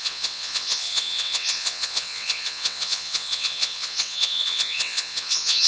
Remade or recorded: remade